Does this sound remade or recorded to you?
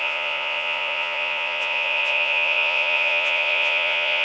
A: remade